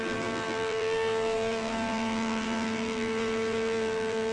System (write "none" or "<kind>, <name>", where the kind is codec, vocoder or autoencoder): vocoder, BigVGAN v2